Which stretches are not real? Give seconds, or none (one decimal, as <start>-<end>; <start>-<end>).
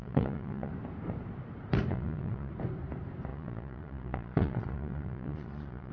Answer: 0.0-0.7; 1.9-2.5; 3.3-5.9